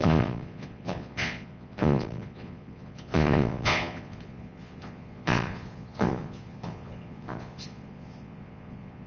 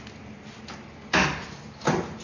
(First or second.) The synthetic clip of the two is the first